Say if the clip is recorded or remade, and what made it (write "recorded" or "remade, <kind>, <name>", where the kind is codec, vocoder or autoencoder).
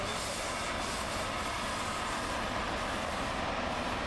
recorded